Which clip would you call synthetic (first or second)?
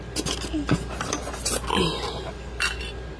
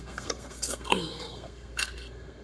second